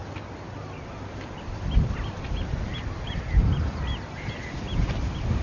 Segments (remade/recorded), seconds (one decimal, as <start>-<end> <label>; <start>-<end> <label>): 0.0-5.4 recorded